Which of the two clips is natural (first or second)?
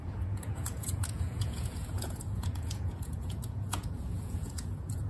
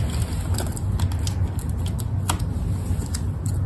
second